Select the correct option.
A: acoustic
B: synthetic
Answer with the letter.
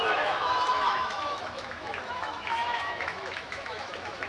B